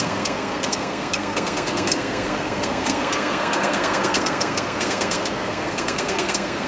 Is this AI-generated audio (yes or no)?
yes